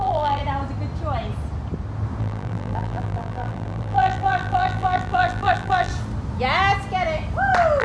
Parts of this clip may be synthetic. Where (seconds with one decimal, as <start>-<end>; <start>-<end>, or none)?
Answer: 0.0-0.4; 2.2-5.9